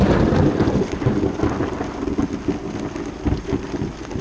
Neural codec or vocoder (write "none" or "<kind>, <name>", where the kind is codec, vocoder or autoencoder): none